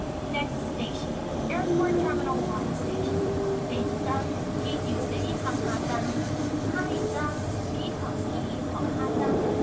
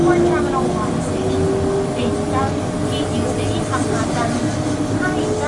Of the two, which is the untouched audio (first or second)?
second